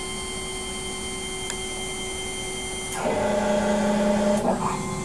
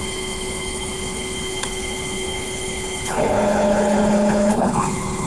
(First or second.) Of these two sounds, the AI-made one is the second